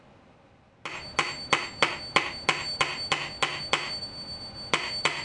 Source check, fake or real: real